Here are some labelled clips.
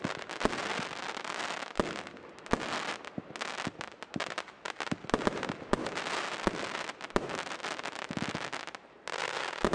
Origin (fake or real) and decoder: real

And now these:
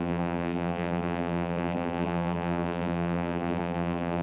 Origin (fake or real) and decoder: fake, vocoder, BigVGAN v2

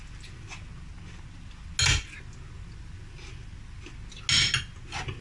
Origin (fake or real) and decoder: real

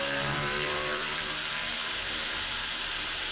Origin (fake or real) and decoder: fake, vocoder, BigVGAN v2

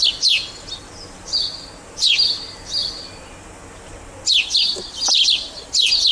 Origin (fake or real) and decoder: real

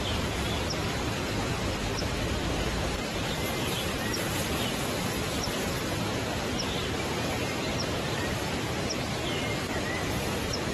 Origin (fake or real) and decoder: fake, vocoder, BigVGAN v2